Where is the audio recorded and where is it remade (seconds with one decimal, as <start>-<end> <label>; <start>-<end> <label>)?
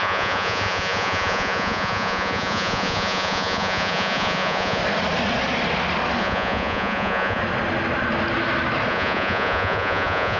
0.0-4.8 remade; 4.8-6.2 recorded; 6.2-7.4 remade; 7.4-8.9 recorded; 8.9-10.4 remade